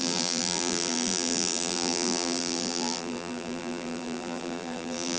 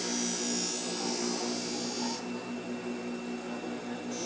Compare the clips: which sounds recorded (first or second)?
second